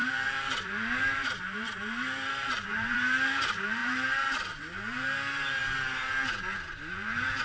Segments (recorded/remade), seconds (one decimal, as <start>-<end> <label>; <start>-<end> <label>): 0.0-5.6 remade; 5.6-6.9 recorded; 6.9-7.4 remade